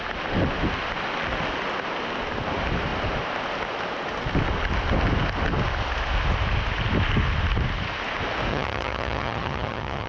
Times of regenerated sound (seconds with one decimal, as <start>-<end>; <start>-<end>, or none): 8.5-10.1